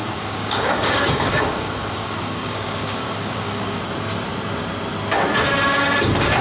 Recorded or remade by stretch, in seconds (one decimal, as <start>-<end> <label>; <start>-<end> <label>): 0.0-3.8 remade; 3.8-6.4 recorded